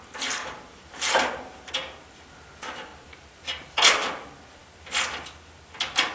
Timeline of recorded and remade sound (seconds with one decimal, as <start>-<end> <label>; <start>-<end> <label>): 0.0-0.4 recorded; 0.4-1.7 remade; 1.7-6.1 recorded